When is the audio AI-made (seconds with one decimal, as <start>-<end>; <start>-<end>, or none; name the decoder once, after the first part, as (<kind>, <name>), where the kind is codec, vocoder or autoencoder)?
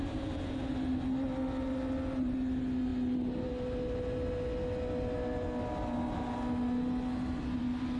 none